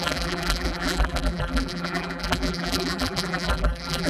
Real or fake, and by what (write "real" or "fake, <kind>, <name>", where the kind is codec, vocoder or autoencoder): fake, vocoder, BigVGAN v2